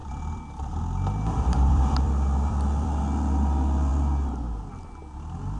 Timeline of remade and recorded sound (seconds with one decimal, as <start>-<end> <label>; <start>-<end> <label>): 0.0-3.0 remade; 3.0-5.6 recorded